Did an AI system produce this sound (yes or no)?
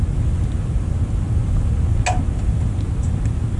no